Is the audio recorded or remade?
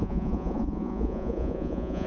remade